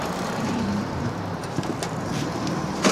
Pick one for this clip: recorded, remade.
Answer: remade